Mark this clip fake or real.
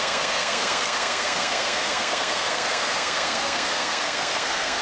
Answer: fake